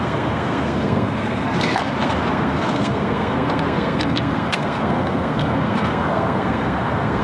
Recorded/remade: remade